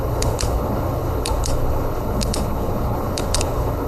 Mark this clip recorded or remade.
remade